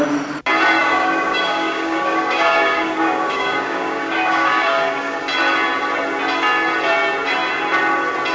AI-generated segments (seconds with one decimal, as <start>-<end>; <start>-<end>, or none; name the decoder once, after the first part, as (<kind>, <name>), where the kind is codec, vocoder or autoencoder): 0.8-5.2 (codec, DAC)